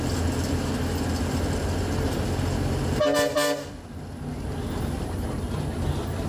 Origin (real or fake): real